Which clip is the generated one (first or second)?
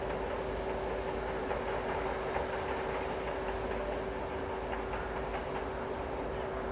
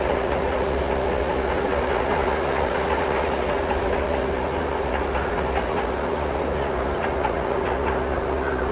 second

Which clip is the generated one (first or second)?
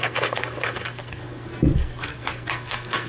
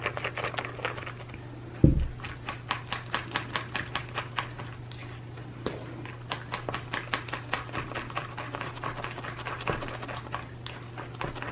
first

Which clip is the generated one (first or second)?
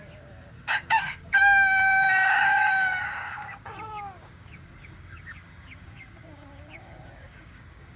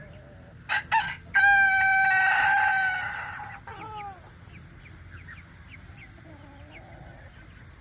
first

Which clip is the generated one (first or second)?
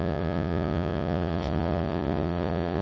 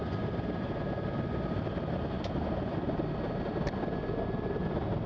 first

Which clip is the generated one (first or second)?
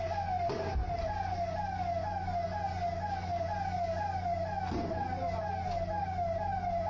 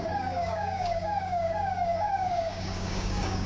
second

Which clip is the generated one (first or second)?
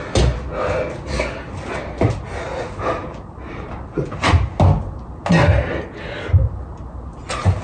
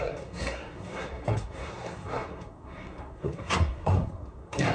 second